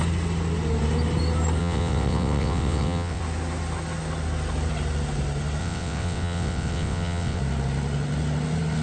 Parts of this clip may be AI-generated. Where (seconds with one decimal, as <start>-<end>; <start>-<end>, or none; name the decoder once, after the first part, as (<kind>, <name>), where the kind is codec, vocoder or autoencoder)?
1.6-3.2 (vocoder, WaveNeXt); 5.6-7.4